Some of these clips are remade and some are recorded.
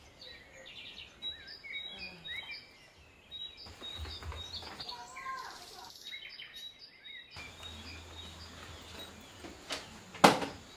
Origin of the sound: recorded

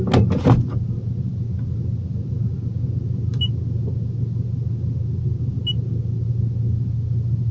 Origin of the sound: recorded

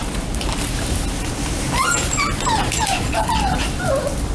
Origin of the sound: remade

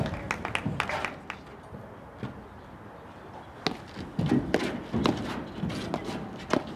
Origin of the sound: recorded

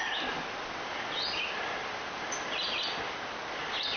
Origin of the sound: recorded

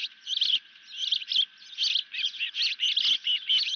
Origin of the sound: recorded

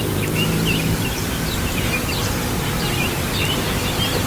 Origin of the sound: remade